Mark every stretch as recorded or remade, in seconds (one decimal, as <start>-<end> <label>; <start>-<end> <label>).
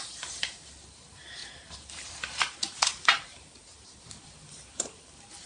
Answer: 0.0-5.5 remade